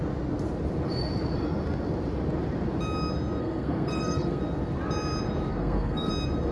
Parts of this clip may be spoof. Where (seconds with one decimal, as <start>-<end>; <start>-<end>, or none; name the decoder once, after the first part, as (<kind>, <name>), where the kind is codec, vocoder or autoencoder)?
3.4-4.4 (codec, SNAC); 5.5-6.1

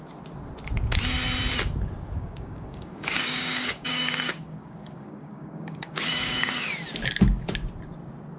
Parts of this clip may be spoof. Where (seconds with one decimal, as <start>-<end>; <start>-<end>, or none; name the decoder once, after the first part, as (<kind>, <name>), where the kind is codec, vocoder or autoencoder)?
2.2-6.7 (codec, DAC)

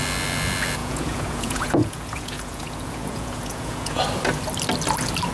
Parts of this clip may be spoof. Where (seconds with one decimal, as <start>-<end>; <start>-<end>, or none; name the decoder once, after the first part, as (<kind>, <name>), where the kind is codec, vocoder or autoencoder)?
0.8-4.0 (vocoder, Vocos)

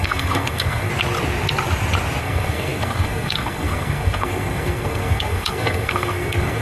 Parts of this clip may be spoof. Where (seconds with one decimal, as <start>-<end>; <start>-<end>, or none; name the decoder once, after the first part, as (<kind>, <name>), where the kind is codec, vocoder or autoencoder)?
0.0-0.9 (codec, SNAC); 2.2-6.6

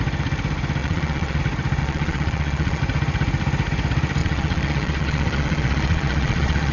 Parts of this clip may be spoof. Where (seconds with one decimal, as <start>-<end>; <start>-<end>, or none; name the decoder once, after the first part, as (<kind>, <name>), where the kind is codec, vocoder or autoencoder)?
0.8-1.4 (vocoder, Vocos); 1.8-2.8; 4.2-6.7

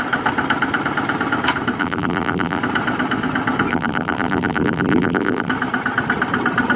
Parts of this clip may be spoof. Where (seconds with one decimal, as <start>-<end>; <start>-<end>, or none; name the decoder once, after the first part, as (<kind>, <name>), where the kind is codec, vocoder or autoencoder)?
1.8-2.6 (vocoder, BigVGAN v2); 3.7-5.5

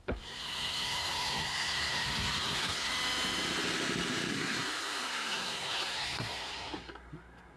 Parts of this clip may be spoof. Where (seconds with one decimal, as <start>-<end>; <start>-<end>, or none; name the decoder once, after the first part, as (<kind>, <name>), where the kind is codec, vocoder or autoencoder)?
0.0-2.9 (codec, SNAC); 4.3-7.6